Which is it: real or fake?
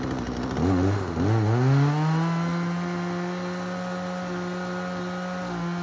real